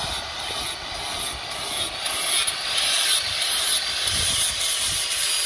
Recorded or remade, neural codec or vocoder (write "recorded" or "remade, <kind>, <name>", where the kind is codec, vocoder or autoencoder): recorded